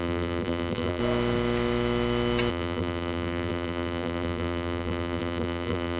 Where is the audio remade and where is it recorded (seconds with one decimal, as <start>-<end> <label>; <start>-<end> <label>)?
0.0-1.0 remade; 1.0-2.5 recorded; 2.5-6.0 remade